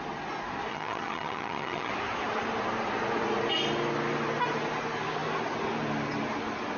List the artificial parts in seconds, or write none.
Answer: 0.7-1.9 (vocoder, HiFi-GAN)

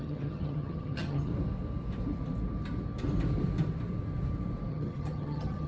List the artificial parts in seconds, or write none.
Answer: 0.0-1.3 (vocoder, HiFi-GAN); 4.7-5.7

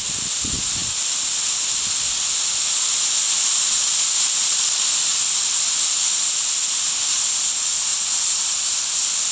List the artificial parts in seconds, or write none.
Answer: none

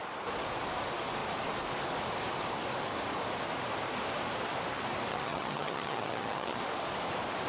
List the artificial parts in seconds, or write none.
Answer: 5.1-6.6 (vocoder, HiFi-GAN)

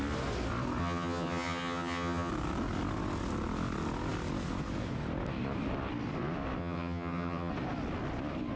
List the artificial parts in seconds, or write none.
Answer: 0.8-2.3 (vocoder, HiFi-GAN); 6.6-7.5

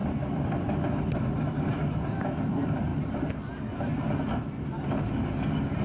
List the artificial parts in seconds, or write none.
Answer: none

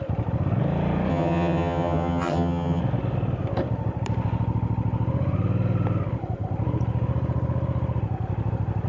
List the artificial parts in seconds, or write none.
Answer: 1.1-2.8 (vocoder, HiFi-GAN)

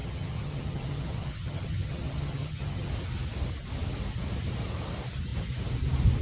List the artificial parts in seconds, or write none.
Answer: 0.0-2.9 (vocoder, HiFi-GAN)